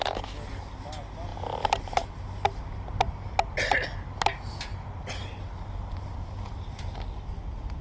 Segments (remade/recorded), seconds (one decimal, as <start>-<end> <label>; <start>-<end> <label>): 0.0-7.8 recorded